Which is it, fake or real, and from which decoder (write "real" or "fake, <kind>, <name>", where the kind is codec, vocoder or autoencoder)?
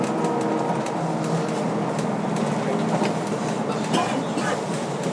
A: real